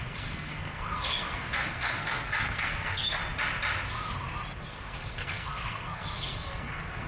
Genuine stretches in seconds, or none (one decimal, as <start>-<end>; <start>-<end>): 3.2-4.6